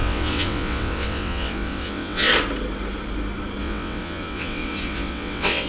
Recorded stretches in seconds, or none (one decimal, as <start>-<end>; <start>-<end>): 2.3-3.6